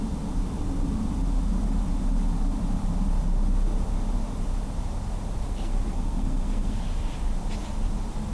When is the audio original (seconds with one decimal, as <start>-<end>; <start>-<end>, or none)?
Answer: 0.0-5.4; 6.8-8.3

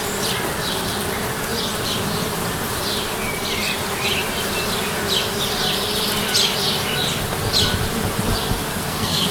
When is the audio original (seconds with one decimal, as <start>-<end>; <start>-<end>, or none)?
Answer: 0.0-8.7

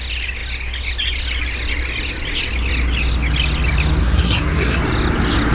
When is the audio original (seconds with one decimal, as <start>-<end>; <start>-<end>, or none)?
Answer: 0.0-4.0; 4.8-5.5

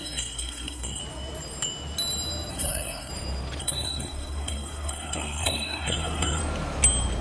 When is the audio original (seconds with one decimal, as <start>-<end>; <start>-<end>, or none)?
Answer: 1.0-2.5; 3.1-3.6; 6.4-7.2

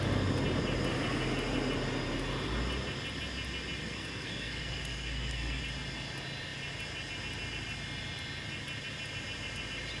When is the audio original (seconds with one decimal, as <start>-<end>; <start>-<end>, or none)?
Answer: 0.0-3.8; 5.6-10.0